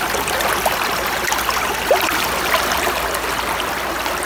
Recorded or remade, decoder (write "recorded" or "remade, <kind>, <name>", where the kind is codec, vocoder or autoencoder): recorded